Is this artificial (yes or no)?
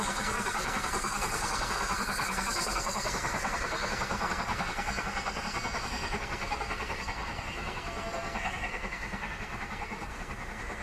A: yes